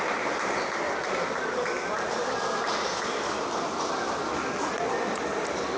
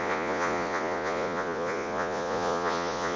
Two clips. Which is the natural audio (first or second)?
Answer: first